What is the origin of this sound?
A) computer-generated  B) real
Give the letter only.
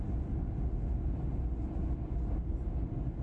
B